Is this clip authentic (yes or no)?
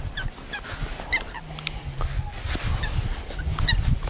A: yes